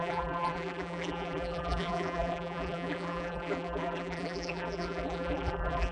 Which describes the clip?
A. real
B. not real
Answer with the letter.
B